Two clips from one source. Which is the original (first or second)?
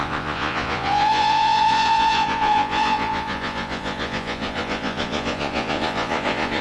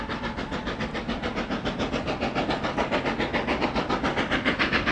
second